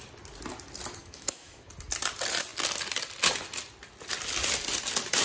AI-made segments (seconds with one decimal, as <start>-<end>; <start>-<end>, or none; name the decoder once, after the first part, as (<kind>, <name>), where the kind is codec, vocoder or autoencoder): 1.0-1.7 (autoencoder, DAC-VAE)